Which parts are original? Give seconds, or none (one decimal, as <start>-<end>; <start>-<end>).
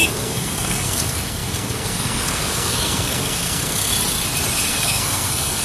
3.9-4.7